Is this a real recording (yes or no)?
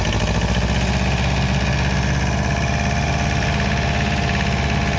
yes